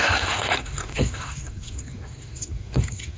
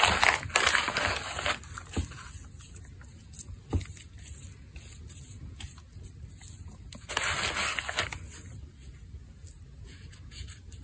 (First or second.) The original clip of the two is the second